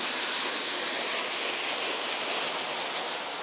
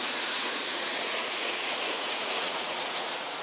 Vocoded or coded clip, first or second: second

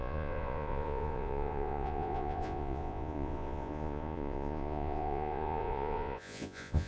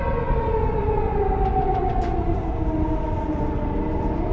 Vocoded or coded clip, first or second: first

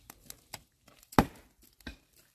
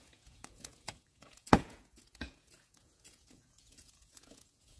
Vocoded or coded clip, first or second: second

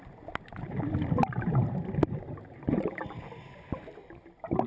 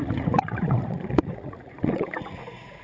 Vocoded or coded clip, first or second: second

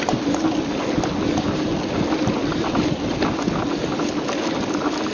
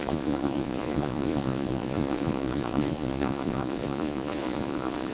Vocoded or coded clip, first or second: second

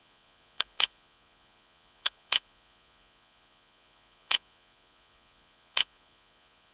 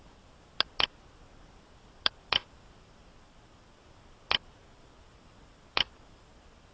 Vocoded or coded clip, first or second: first